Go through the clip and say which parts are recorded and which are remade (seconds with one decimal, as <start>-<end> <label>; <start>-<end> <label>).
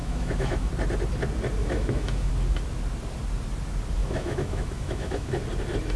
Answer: 0.0-0.7 remade; 0.7-1.6 recorded; 1.6-2.3 remade; 2.3-4.0 recorded; 4.0-5.4 remade; 5.4-6.0 recorded